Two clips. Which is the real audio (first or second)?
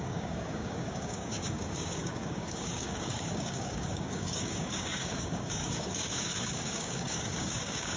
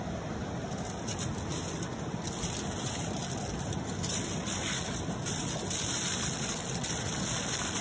second